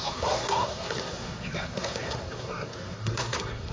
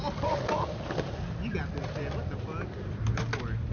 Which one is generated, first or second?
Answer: first